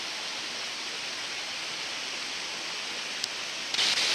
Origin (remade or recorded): recorded